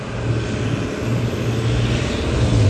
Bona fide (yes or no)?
yes